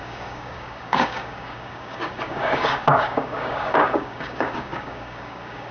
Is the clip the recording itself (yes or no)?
no